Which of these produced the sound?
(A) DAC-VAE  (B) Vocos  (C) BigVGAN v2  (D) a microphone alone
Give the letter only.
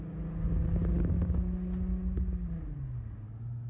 D